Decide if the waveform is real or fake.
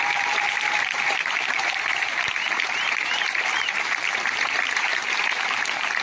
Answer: fake